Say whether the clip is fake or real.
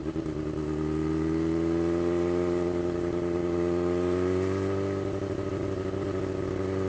real